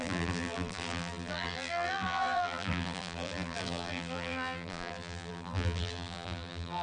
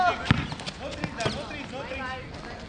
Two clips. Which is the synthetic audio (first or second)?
first